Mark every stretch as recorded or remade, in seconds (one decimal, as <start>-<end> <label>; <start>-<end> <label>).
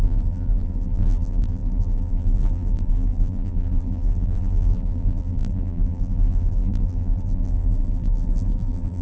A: 0.0-9.0 remade